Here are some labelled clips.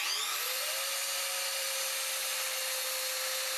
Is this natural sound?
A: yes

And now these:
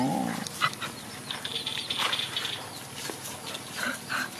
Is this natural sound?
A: yes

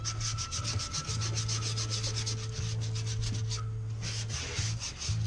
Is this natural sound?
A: yes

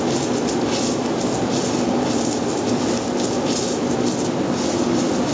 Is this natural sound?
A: yes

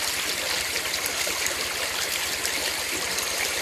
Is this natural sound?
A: yes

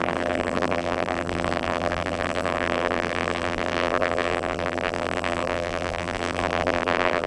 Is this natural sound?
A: no